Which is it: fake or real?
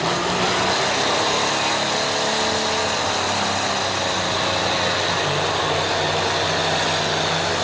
real